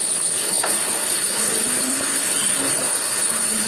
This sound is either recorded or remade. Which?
remade